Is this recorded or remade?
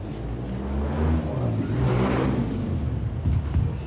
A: recorded